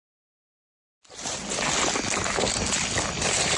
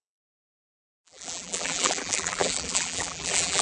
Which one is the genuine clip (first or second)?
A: first